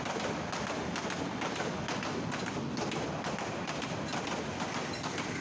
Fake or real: real